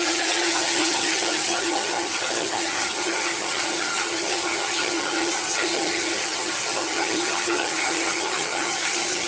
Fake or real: fake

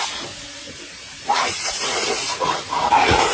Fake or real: fake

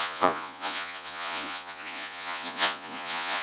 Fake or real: fake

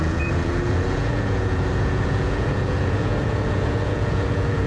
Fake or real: fake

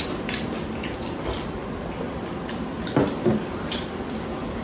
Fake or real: fake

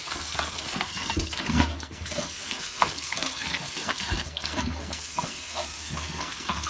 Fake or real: fake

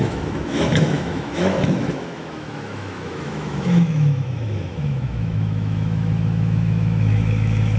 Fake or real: fake